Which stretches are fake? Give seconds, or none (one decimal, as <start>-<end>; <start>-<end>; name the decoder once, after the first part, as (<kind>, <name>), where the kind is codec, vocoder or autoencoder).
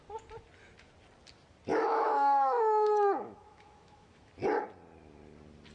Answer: 1.7-4.3 (autoencoder, DAC-VAE)